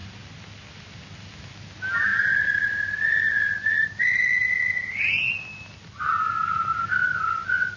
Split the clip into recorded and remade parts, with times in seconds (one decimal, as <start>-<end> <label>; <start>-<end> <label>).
0.0-1.4 remade; 1.4-2.1 recorded; 2.1-2.8 remade; 2.8-5.5 recorded; 5.5-6.2 remade; 6.2-7.8 recorded